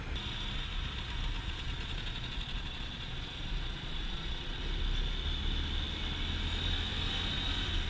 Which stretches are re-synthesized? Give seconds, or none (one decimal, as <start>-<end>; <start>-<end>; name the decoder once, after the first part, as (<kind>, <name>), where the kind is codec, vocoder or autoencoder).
1.4-4.6 (vocoder, Vocos)